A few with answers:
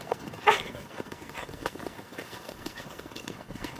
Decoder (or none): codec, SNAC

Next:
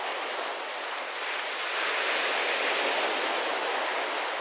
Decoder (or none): none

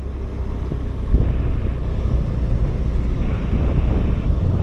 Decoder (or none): none